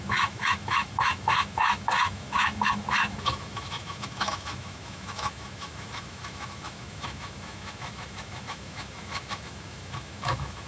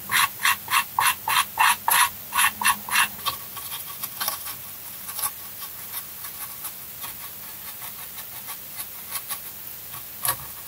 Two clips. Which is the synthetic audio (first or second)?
first